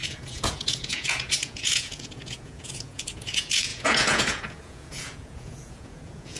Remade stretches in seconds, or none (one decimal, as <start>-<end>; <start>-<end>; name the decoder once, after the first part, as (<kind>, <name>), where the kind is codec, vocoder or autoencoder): 0.0-6.4 (vocoder, Vocos)